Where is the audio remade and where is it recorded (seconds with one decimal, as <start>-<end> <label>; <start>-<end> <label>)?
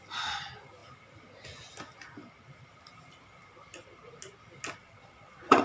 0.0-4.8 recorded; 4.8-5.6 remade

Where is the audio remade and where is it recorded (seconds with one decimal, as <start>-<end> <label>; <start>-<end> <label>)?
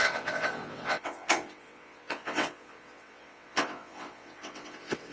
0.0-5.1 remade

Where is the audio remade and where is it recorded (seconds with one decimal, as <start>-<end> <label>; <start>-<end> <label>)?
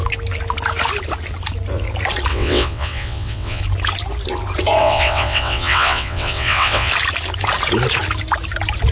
0.0-2.3 recorded; 2.3-3.6 remade; 3.6-4.8 recorded; 4.8-6.9 remade; 6.9-8.9 recorded